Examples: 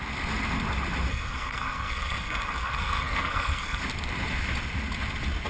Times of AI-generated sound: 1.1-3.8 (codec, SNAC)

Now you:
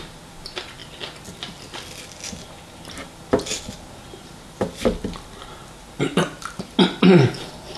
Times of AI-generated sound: none

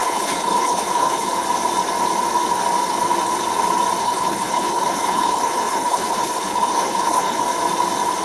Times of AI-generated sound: 0.0-1.3 (codec, HILCodec); 4.0-7.4

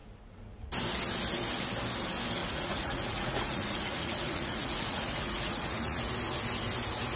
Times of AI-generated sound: 2.4-6.1 (vocoder, Vocos)

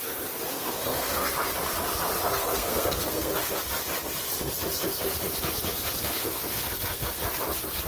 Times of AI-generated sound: 0.5-1.3 (codec, SNAC); 2.3-3.6; 6.0-7.2

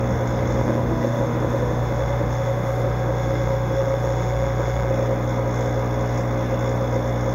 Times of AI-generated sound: 0.6-4.9 (autoencoder, DAC-VAE)